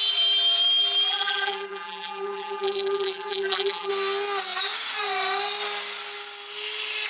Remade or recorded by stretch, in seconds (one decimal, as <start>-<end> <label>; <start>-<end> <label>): 0.0-1.1 recorded; 1.1-3.9 remade; 3.9-7.1 recorded